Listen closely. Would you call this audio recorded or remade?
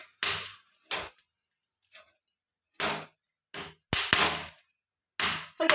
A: recorded